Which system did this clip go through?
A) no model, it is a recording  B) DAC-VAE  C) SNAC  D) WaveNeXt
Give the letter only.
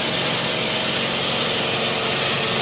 A